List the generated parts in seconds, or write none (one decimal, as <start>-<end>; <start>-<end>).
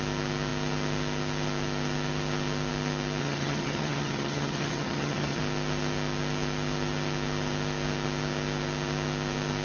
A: 3.2-5.4